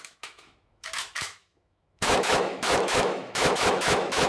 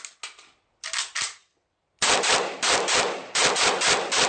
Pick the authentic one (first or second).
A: second